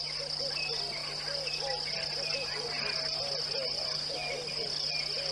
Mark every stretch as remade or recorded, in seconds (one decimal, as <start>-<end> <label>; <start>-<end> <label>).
0.0-5.3 recorded